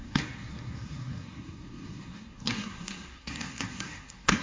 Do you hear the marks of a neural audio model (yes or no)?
yes